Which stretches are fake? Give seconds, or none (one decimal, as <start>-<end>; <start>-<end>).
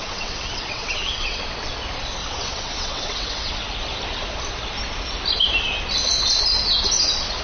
0.0-1.4; 2.2-3.5